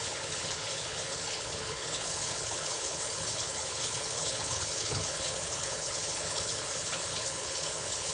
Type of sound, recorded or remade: remade